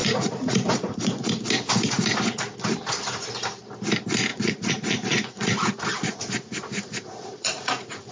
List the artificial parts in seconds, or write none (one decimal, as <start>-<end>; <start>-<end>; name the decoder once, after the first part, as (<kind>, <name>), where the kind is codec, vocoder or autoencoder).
0.0-1.3 (vocoder, Vocos); 4.3-8.1